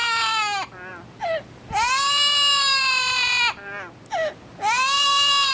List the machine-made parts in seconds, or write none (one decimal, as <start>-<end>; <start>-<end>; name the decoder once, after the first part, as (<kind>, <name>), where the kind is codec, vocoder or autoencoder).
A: none